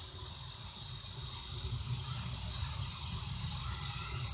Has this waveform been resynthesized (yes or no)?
no